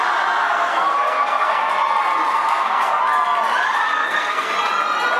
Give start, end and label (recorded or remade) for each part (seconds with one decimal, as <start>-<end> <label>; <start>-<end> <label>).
0.0-0.4 recorded; 0.4-1.7 remade; 1.7-2.3 recorded; 2.3-3.0 remade; 3.0-4.0 recorded; 4.0-4.5 remade; 4.5-5.2 recorded